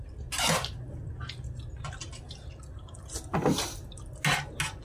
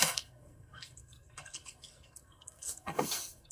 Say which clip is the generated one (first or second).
second